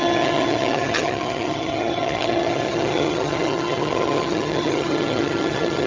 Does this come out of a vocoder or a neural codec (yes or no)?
yes